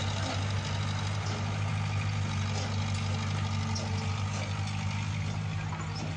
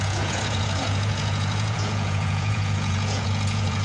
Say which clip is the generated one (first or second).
second